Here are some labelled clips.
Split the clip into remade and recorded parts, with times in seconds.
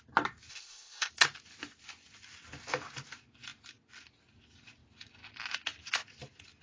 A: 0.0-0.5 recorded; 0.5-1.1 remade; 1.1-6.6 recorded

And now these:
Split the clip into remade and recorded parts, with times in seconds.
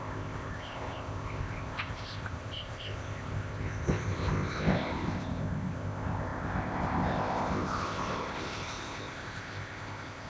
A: 0.0-10.3 remade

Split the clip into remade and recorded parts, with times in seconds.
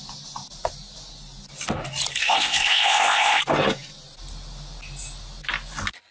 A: 0.0-2.2 recorded; 2.2-3.4 remade; 3.4-6.1 recorded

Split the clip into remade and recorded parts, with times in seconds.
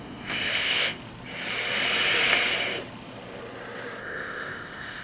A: 0.0-1.0 remade; 1.0-4.0 recorded; 4.0-5.0 remade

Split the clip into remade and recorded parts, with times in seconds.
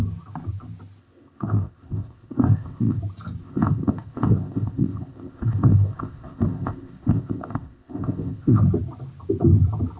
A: 0.0-1.0 recorded; 1.0-3.0 remade; 3.0-3.4 recorded; 3.4-8.6 remade; 8.6-10.0 recorded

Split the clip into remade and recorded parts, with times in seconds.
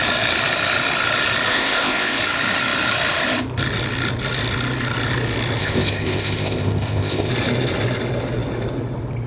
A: 0.0-1.5 recorded; 1.5-2.2 remade; 2.2-5.6 recorded; 5.6-7.3 remade; 7.3-9.3 recorded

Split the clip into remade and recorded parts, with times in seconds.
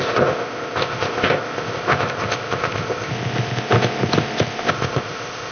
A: 0.0-3.1 remade; 3.1-4.7 recorded; 4.7-5.5 remade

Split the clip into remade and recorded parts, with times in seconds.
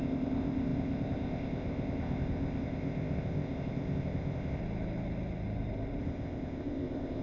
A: 0.0-4.6 remade; 4.6-6.0 recorded; 6.0-7.2 remade